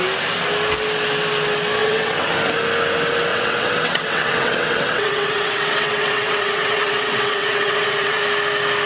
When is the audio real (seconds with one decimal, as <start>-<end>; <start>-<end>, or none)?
0.0-1.8; 2.3-3.3; 8.2-8.9